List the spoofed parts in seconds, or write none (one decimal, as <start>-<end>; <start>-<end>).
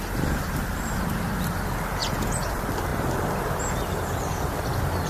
2.0-2.5